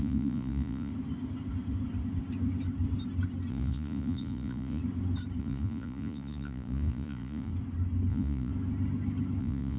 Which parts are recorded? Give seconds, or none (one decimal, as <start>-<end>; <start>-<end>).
0.9-3.5; 4.8-5.4; 7.5-8.1; 8.5-9.4